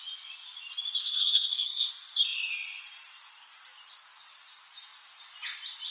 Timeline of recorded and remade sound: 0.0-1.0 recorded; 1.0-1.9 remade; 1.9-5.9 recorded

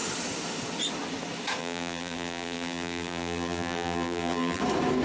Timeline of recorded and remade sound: 0.0-1.6 recorded; 1.6-4.6 remade; 4.6-5.0 recorded

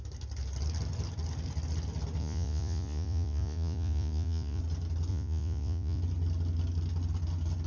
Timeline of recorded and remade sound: 0.0-2.2 recorded; 2.2-4.6 remade; 4.6-5.1 recorded; 5.1-6.0 remade; 6.0-7.7 recorded

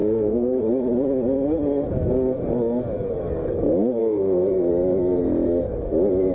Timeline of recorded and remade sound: 0.0-0.6 remade; 0.6-4.0 recorded; 4.0-4.7 remade; 4.7-6.3 recorded